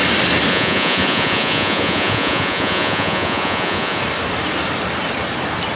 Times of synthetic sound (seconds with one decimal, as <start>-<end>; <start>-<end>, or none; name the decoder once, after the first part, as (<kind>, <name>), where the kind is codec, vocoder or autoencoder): 0.5-4.0 (vocoder, Vocos)